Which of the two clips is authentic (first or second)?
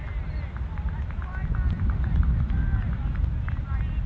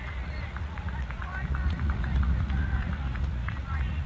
first